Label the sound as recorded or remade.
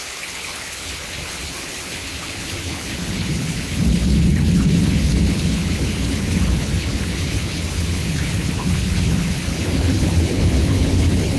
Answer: remade